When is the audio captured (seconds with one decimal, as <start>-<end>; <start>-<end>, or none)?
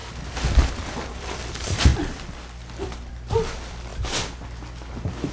0.0-0.7; 1.9-2.8; 3.9-5.3